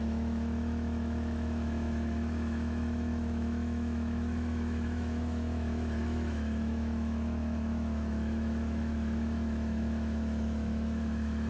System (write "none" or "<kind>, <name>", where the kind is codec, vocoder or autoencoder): autoencoder, DAC-VAE